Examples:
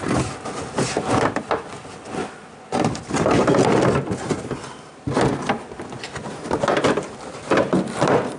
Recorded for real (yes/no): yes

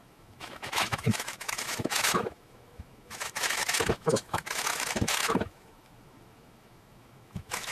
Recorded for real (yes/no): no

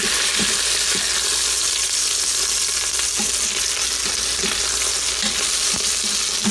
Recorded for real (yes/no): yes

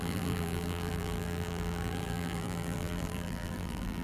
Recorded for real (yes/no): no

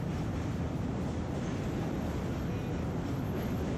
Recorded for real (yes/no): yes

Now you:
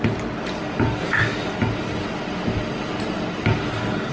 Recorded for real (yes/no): yes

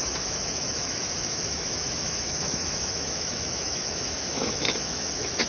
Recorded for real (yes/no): no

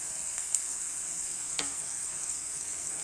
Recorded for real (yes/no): no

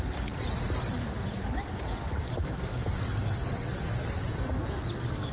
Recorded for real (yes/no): yes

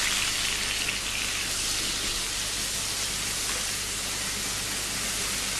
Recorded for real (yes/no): yes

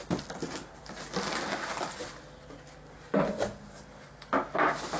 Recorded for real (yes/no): yes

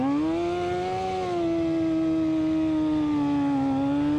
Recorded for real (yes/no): yes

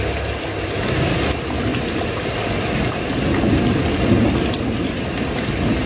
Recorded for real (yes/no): yes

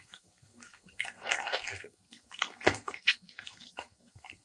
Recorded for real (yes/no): no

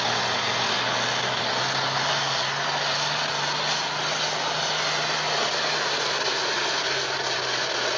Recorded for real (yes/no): yes